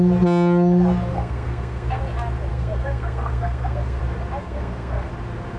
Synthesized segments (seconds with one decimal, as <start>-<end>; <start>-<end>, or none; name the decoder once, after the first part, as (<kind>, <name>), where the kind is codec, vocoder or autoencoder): 1.1-2.0 (codec, SNAC); 2.5-4.0; 4.4-5.1